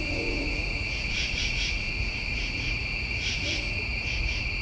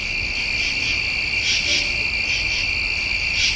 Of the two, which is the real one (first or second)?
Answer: second